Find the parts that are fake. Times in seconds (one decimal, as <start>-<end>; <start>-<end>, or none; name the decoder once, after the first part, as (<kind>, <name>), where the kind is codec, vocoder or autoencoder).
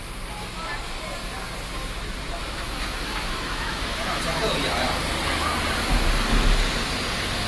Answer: 2.4-4.2 (autoencoder, DAC-VAE)